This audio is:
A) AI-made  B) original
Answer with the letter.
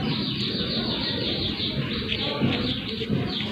B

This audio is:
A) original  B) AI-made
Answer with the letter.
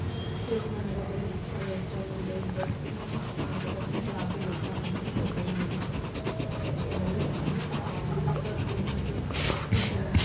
A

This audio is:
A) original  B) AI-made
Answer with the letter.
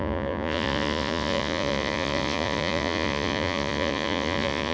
B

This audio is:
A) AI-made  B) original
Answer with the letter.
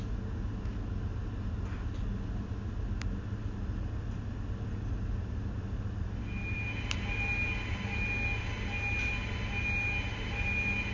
B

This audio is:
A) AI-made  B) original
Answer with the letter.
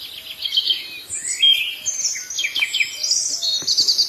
B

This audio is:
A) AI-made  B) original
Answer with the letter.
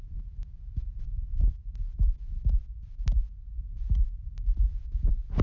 B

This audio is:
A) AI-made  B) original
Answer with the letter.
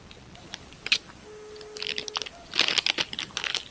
B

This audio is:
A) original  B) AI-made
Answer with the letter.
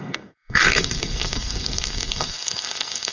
B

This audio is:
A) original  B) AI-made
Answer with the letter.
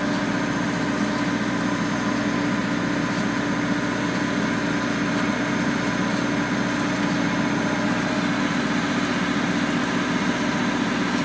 A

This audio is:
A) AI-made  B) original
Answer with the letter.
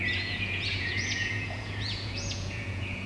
A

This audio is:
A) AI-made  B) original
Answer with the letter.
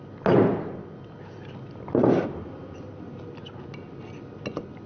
B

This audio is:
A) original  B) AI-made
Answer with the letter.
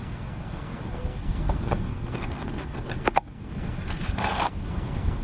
B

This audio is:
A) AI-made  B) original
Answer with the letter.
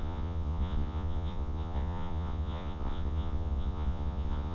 A